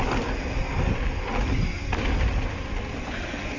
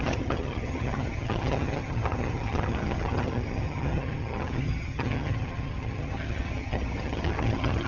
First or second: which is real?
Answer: first